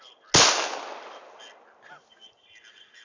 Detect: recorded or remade recorded